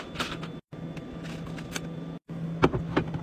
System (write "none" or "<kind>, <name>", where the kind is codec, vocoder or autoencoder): none